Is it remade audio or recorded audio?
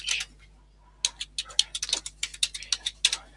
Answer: recorded